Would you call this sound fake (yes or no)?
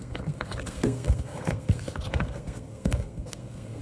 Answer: yes